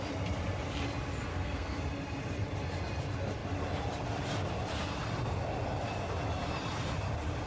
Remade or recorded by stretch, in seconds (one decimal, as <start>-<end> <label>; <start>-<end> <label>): 0.0-1.3 recorded; 1.3-1.8 remade; 1.8-7.5 recorded